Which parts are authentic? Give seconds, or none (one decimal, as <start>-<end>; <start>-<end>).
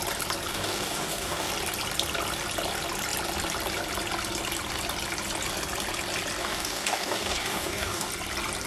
0.0-0.5; 1.5-6.4; 8.1-8.7